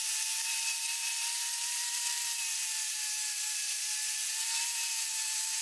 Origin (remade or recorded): remade